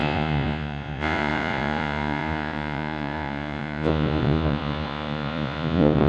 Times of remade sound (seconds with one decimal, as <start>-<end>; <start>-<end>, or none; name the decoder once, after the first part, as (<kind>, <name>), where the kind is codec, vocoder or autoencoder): 0.0-6.1 (vocoder, Vocos)

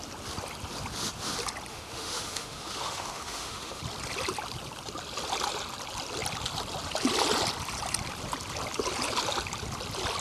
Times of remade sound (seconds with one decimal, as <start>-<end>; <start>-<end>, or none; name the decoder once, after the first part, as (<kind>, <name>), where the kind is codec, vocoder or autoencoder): 1.7-3.8 (autoencoder, DAC-VAE)

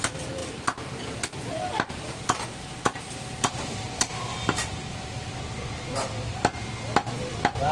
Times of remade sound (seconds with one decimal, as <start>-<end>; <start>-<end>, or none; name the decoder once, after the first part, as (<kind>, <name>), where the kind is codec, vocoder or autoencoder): 2.8-5.3 (vocoder, BigVGAN v2)

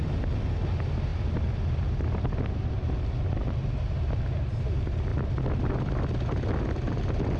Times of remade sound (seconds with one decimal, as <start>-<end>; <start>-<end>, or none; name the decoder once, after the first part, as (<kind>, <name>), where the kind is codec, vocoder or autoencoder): none

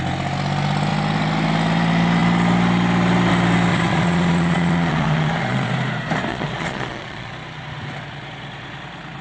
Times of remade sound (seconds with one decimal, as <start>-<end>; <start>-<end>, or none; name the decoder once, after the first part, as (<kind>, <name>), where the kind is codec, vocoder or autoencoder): 3.7-5.7 (vocoder, Vocos); 6.3-7.3